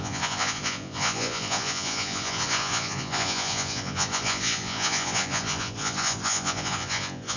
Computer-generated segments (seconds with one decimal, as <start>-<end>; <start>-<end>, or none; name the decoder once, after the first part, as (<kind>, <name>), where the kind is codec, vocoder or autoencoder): 0.0-7.4 (vocoder, Vocos)